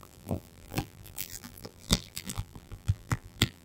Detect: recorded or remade remade